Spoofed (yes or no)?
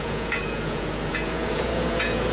yes